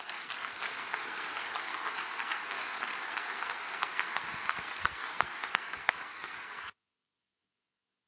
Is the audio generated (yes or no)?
yes